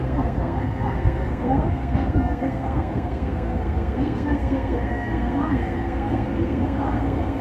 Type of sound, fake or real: fake